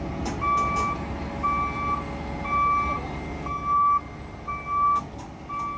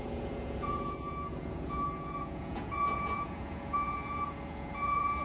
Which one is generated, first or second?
second